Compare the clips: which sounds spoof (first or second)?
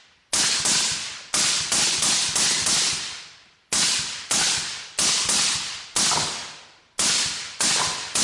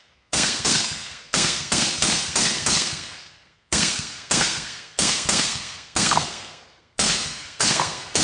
second